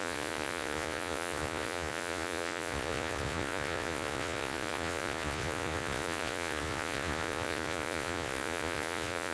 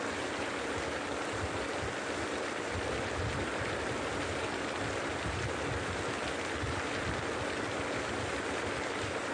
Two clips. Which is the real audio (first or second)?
second